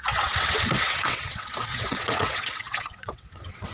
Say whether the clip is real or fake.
fake